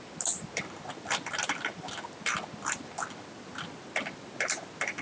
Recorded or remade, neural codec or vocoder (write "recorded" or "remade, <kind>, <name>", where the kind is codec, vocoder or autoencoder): recorded